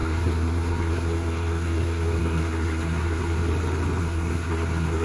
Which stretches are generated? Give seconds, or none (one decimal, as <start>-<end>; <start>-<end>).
0.0-3.5; 4.0-5.0